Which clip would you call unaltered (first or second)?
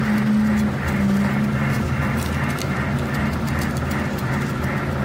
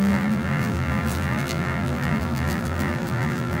first